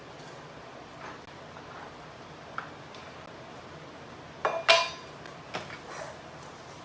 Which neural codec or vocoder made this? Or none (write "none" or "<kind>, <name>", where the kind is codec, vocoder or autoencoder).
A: none